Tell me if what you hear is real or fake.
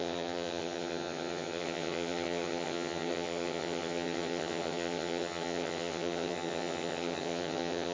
fake